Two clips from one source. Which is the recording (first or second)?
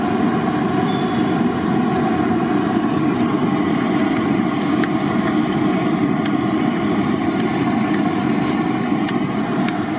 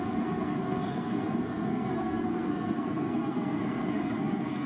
first